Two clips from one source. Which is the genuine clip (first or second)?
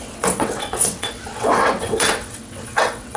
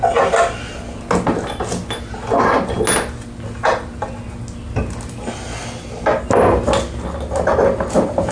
second